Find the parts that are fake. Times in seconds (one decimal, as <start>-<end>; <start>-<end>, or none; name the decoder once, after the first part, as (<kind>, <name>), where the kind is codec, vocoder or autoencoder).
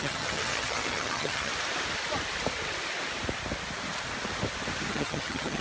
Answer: 0.0-1.5 (vocoder, HiFi-GAN); 4.9-5.6